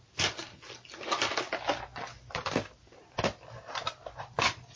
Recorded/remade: recorded